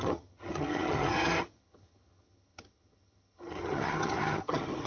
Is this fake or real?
fake